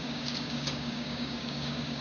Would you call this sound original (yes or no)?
no